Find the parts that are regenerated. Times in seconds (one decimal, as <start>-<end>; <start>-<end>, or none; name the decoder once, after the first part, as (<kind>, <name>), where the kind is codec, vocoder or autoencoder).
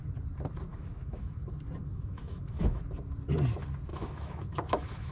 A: 0.7-1.4 (autoencoder, DAC-VAE); 1.8-2.8; 3.9-5.1